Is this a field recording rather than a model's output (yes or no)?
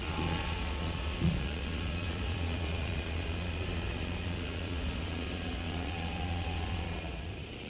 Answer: no